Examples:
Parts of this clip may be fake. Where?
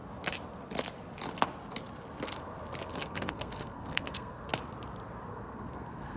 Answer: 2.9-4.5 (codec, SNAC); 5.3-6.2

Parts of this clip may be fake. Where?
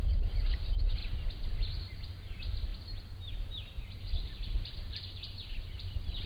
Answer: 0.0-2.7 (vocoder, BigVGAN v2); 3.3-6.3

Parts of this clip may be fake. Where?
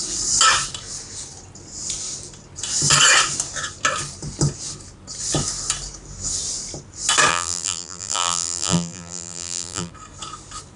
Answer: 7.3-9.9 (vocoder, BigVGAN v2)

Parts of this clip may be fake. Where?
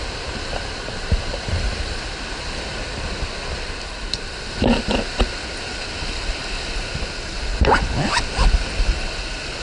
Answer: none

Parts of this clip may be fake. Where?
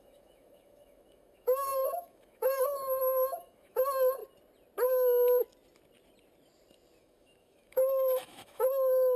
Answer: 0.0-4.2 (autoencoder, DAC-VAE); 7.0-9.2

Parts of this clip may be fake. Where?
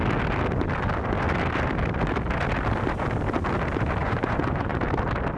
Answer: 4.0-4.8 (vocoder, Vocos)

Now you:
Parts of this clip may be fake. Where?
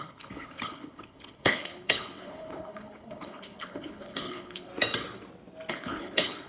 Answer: 0.0-4.7 (codec, HILCodec); 5.7-6.5